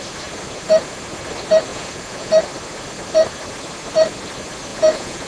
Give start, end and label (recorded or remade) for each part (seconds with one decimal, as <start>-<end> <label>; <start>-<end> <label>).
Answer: 0.0-1.7 recorded; 1.7-2.3 remade; 2.3-4.7 recorded; 4.7-5.3 remade